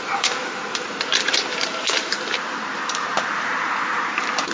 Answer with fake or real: fake